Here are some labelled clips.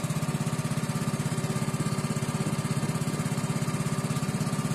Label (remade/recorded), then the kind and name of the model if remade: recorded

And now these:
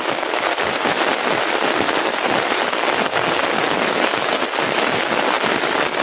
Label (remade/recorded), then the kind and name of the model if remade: recorded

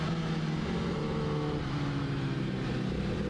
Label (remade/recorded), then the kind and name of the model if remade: recorded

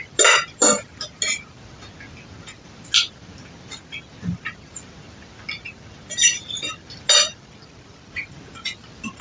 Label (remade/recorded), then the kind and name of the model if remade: recorded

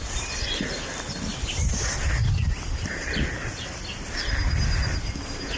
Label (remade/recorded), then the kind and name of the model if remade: recorded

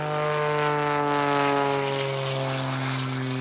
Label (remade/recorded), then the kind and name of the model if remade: recorded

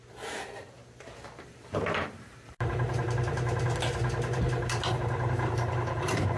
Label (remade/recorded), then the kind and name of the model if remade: remade, vocoder, BigVGAN v2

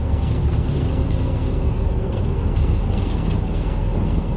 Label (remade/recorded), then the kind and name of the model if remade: remade, codec, SNAC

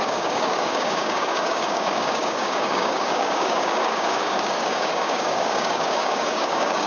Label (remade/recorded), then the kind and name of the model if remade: remade, codec, DAC